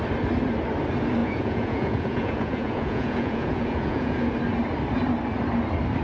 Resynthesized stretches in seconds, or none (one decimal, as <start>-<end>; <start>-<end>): 1.2-4.3